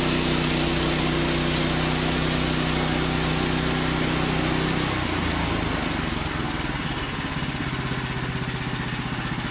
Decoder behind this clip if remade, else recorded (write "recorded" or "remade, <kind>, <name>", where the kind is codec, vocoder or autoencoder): recorded